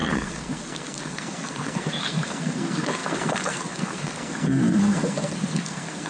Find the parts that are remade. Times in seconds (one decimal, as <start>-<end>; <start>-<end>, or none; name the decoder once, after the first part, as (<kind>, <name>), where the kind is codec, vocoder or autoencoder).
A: 0.0-6.1 (codec, SNAC)